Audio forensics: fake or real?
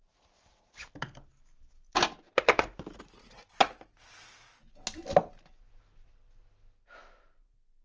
real